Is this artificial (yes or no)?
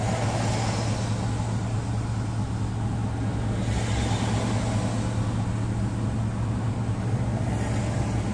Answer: no